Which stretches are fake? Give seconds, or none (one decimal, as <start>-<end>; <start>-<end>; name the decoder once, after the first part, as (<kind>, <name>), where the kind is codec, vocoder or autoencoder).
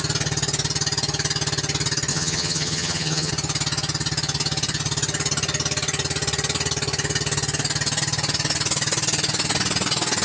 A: 2.1-3.3 (vocoder, HiFi-GAN)